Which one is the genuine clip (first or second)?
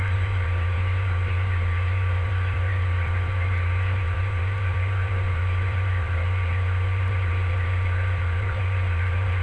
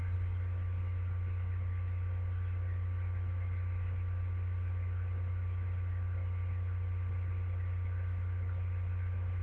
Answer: second